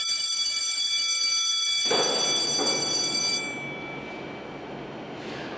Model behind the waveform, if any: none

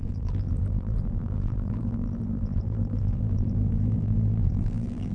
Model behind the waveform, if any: vocoder, BigVGAN v2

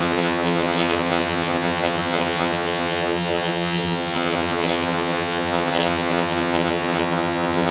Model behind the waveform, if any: vocoder, HiFi-GAN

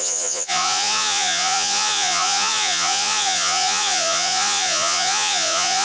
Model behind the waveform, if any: vocoder, Vocos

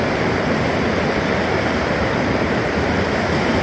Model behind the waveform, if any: vocoder, BigVGAN v2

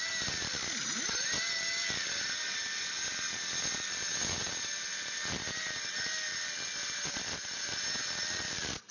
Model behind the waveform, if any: none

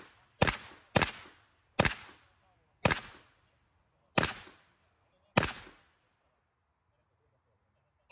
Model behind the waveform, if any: none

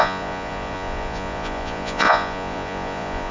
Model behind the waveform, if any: vocoder, Vocos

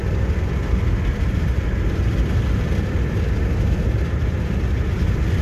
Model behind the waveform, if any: none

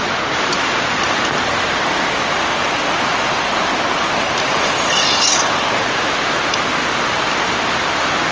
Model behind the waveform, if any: none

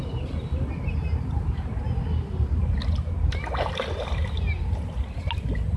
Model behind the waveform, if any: none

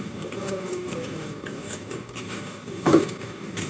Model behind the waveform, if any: codec, DAC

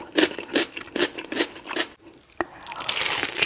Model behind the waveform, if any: none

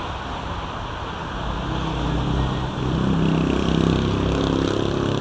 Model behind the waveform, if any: none